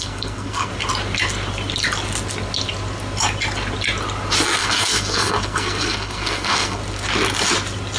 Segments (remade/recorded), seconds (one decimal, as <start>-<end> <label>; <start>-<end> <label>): 0.0-0.7 remade; 0.7-4.6 recorded; 4.6-6.8 remade; 6.8-8.0 recorded